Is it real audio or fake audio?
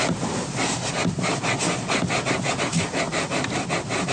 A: real